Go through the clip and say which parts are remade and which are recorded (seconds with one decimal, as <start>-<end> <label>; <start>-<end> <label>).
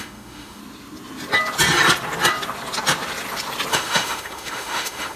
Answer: 0.0-0.6 remade; 0.6-3.7 recorded; 3.7-5.2 remade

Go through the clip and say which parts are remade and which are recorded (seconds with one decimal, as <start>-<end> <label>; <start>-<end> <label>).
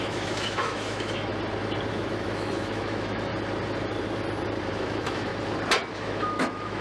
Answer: 0.0-1.3 remade; 1.3-1.9 recorded; 1.9-3.3 remade; 3.3-4.7 recorded; 4.7-5.3 remade; 5.3-5.9 recorded; 5.9-6.8 remade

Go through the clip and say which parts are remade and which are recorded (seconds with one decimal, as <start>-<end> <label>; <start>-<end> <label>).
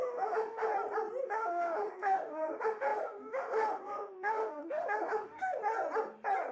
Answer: 0.0-0.7 remade; 0.7-1.2 recorded; 1.2-5.6 remade; 5.6-6.5 recorded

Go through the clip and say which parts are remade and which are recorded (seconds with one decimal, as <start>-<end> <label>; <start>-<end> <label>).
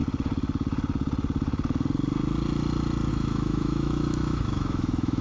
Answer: 0.0-3.1 recorded; 3.1-5.2 remade